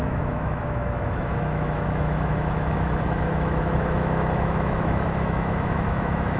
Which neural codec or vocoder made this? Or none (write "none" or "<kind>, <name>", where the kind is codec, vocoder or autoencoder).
autoencoder, DAC-VAE